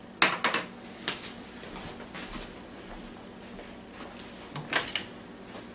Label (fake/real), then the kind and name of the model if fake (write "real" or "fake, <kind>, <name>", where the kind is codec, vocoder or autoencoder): real